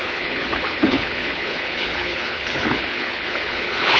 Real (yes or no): no